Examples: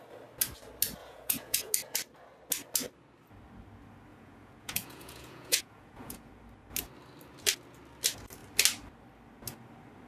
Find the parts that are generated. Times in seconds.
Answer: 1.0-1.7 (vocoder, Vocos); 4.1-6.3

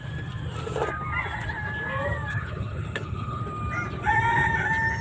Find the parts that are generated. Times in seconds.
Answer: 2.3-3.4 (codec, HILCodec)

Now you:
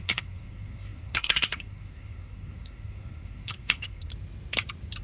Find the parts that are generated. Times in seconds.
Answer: 0.0-4.1 (codec, SNAC)

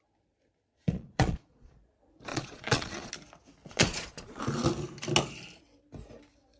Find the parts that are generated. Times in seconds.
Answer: 0.7-1.9 (vocoder, Vocos); 2.3-3.1; 3.6-4.4